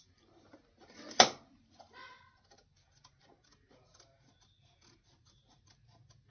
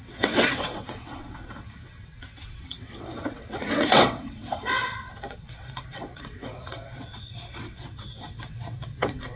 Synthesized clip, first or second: second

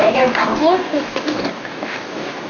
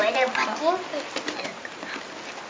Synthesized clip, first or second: first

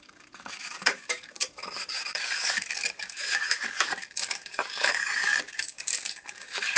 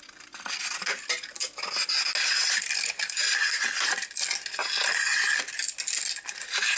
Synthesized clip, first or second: first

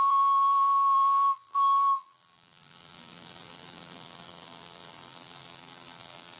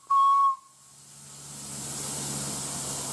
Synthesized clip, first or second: first